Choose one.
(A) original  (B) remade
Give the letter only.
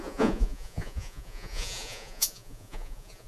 B